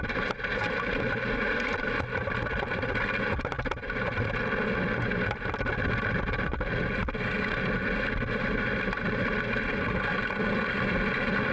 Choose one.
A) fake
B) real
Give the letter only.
B